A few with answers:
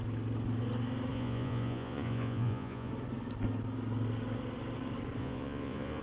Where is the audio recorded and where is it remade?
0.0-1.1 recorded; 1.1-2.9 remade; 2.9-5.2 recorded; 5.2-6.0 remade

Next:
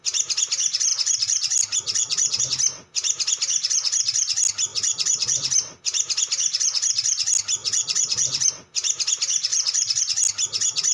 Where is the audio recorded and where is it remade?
0.0-0.9 recorded; 0.9-2.4 remade; 2.4-4.7 recorded; 4.7-5.8 remade; 5.8-7.6 recorded; 7.6-8.5 remade; 8.5-9.5 recorded; 9.5-10.0 remade; 10.0-10.9 recorded

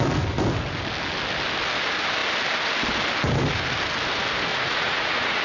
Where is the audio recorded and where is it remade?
0.0-4.5 recorded; 4.5-5.4 remade

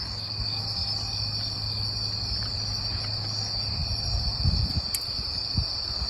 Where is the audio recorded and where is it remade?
0.0-6.1 recorded

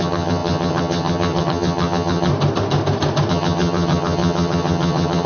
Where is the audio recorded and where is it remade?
0.0-2.3 remade; 2.3-3.3 recorded; 3.3-5.3 remade